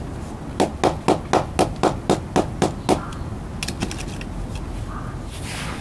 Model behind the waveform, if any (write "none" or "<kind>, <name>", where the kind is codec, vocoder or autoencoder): none